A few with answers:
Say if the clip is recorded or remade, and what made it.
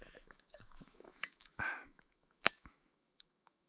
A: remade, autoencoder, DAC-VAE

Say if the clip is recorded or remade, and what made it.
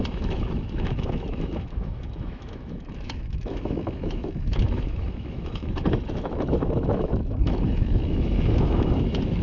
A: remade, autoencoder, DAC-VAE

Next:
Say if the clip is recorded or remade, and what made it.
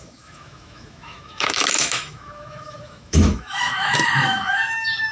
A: remade, autoencoder, DAC-VAE